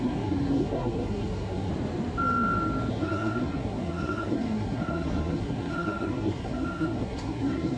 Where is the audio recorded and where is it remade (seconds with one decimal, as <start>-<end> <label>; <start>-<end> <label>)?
0.0-1.7 remade; 1.7-2.9 recorded; 2.9-7.8 remade